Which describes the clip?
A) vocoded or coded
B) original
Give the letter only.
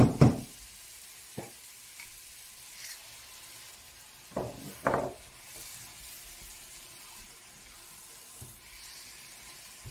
B